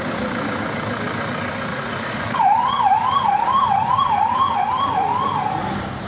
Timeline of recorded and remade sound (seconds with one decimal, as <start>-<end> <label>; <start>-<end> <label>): 0.0-1.7 recorded; 1.7-4.7 remade; 4.7-6.1 recorded